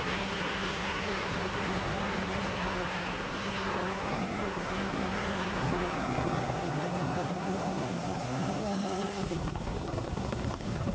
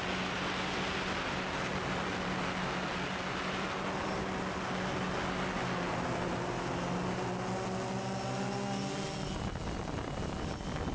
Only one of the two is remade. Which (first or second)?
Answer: first